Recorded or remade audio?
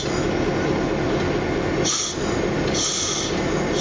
recorded